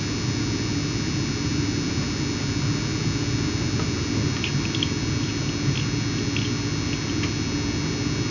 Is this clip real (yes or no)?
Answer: yes